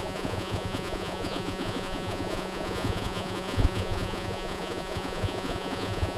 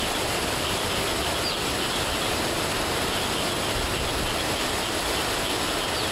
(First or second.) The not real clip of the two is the first